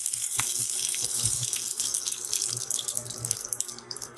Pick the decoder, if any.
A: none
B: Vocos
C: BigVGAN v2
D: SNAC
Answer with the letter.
D